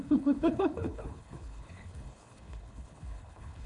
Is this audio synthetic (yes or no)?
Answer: yes